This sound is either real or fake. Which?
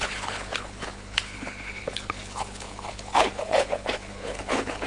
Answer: fake